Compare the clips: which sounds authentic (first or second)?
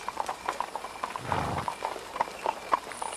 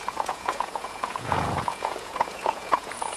first